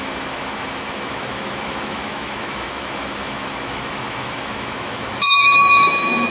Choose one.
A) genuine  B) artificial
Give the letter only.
B